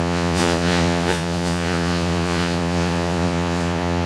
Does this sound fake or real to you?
fake